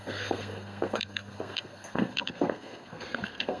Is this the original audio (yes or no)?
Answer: no